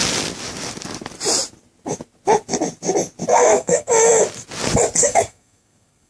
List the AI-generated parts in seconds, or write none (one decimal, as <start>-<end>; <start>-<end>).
3.3-3.9; 5.0-6.1